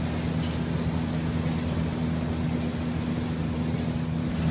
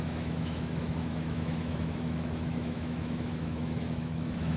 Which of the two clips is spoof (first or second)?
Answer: second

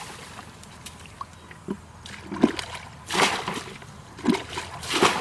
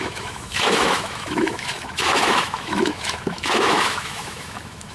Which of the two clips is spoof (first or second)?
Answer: second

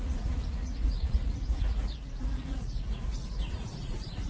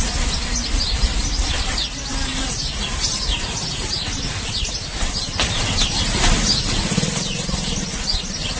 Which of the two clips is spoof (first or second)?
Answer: first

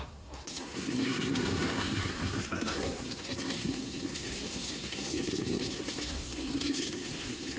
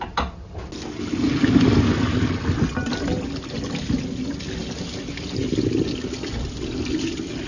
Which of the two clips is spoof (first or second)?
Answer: first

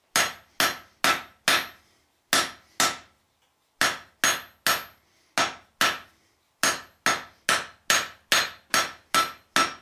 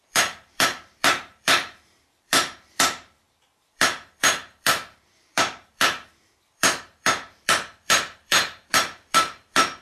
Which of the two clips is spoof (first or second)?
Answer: second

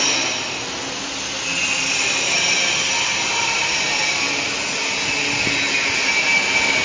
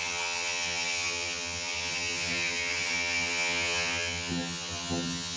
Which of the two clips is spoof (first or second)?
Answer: second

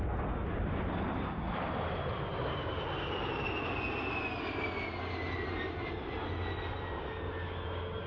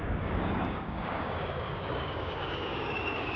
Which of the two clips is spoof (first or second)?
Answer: second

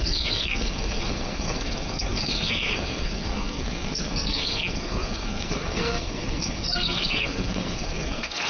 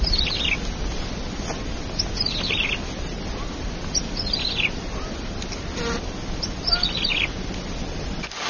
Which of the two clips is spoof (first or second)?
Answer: first